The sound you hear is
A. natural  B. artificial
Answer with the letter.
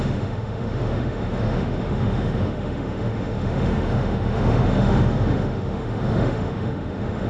B